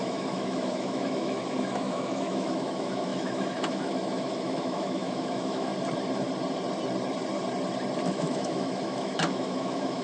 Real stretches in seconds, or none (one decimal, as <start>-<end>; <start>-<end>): 5.7-8.0